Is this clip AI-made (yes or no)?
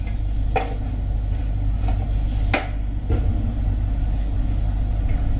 no